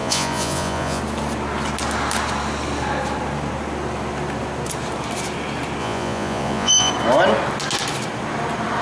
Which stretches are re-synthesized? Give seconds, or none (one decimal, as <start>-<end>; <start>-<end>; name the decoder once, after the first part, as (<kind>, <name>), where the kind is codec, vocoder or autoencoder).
0.0-1.0 (vocoder, Vocos); 5.8-6.9

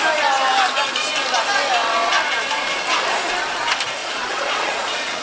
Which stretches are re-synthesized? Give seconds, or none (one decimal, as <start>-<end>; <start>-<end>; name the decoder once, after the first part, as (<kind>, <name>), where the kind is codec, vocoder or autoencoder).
4.0-5.2 (vocoder, Vocos)

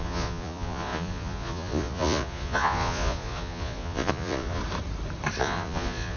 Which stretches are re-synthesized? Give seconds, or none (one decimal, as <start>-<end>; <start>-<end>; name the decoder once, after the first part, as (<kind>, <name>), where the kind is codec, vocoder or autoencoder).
0.0-4.6 (vocoder, Vocos); 5.4-6.2